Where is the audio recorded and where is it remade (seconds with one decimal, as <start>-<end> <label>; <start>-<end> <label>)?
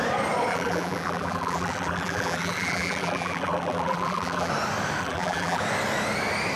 0.0-0.5 recorded; 0.5-4.5 remade; 4.5-5.0 recorded; 5.0-5.6 remade; 5.6-6.6 recorded